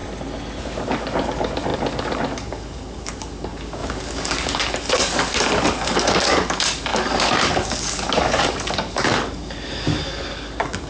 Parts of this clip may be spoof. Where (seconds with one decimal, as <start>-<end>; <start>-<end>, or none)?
0.6-10.9